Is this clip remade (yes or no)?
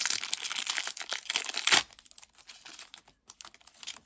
no